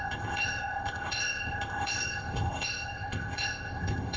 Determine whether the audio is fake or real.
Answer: fake